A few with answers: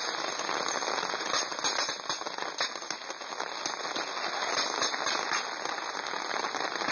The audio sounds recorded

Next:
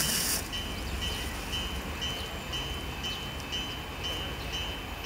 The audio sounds recorded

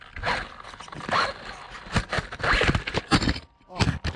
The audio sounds recorded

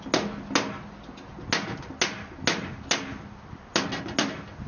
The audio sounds recorded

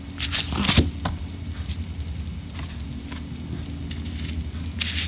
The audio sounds recorded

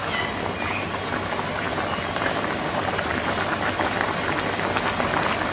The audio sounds recorded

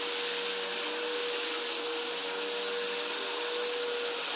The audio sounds recorded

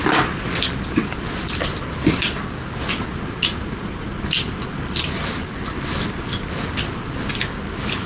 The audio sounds recorded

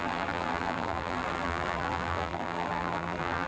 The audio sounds remade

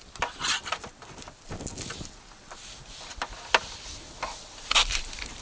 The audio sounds recorded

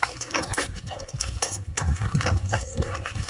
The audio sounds remade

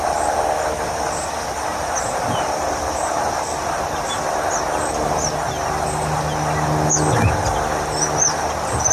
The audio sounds recorded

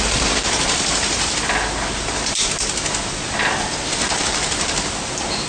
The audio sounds recorded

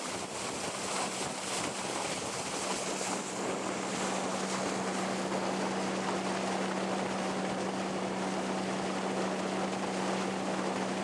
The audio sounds recorded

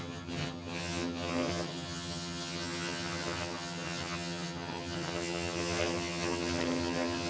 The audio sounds remade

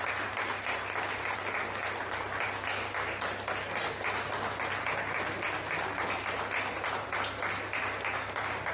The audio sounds recorded